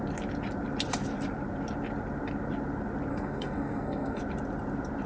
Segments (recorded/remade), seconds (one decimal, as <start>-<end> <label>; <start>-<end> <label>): 0.0-3.1 recorded; 3.1-4.2 remade; 4.2-5.1 recorded